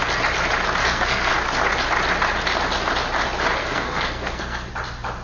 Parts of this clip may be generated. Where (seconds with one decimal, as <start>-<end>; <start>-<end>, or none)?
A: 0.8-1.3; 3.6-4.7